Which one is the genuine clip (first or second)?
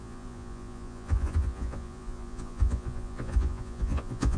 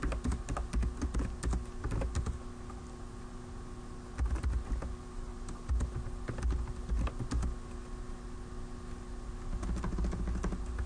second